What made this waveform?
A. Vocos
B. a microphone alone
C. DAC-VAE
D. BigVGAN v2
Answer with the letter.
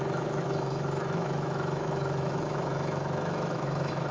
C